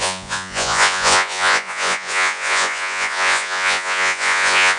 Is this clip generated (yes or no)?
yes